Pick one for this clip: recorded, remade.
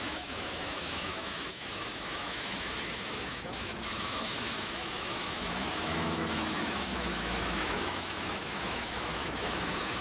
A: remade